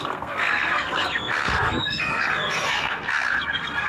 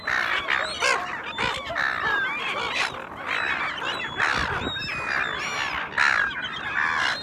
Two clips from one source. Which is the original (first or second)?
second